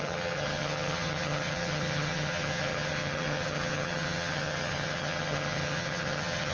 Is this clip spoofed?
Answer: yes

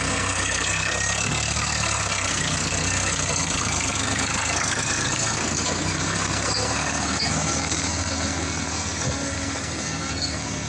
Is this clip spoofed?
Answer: yes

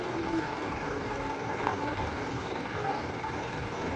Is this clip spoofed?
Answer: yes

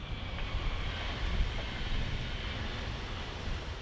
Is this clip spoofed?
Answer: no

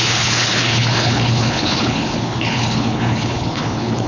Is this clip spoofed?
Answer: yes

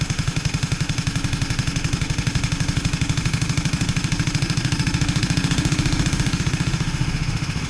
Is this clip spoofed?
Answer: yes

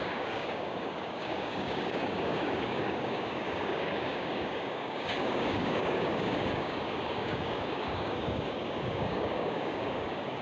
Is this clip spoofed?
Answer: yes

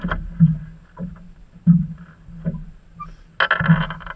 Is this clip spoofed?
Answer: no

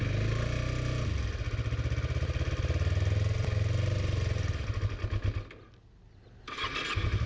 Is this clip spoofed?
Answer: no